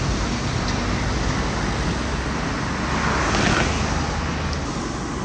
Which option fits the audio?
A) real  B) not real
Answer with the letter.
A